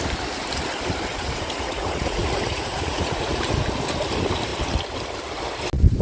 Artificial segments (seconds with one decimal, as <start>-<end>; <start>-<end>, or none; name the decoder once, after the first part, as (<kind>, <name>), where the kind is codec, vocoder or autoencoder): 1.1-3.4 (vocoder, Vocos)